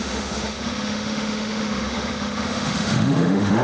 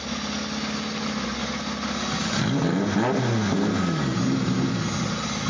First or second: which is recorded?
second